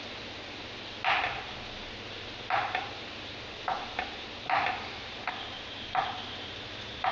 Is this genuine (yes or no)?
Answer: yes